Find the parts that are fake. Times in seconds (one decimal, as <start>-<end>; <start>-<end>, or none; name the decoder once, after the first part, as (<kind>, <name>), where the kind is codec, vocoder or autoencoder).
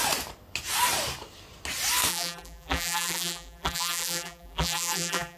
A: 2.1-5.4 (vocoder, BigVGAN v2)